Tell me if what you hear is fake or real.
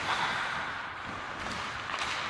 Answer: real